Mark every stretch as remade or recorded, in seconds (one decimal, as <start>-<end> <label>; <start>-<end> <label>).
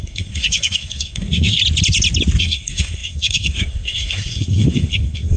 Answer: 0.0-1.6 remade; 1.6-2.4 recorded; 2.4-5.4 remade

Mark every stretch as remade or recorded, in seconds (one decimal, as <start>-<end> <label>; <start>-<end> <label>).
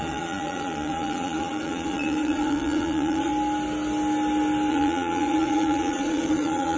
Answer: 0.0-3.3 remade; 3.3-4.7 recorded; 4.7-6.8 remade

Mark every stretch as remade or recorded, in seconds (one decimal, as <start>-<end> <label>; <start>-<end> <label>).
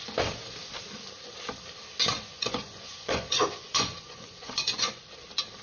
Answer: 0.0-2.3 recorded; 2.3-5.0 remade; 5.0-5.6 recorded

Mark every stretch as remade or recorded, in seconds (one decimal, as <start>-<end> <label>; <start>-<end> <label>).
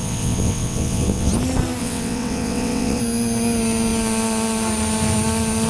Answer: 0.0-1.3 remade; 1.3-1.8 recorded; 1.8-3.0 remade; 3.0-5.7 recorded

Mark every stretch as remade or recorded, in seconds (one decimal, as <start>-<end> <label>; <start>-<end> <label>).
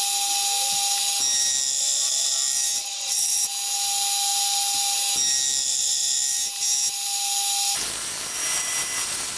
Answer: 0.0-2.8 recorded; 2.8-3.5 remade; 3.5-9.4 recorded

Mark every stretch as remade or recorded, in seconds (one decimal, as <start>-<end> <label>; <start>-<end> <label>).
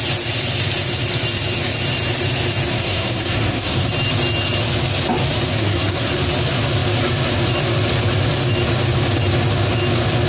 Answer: 0.0-2.7 recorded; 2.7-3.9 remade; 3.9-5.5 recorded; 5.5-6.1 remade; 6.1-10.3 recorded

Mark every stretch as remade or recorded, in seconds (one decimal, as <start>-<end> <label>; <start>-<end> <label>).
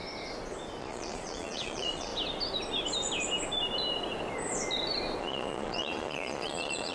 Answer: 0.0-0.8 recorded; 0.8-2.1 remade; 2.1-5.2 recorded; 5.2-6.9 remade